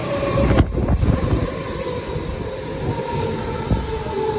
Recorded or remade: recorded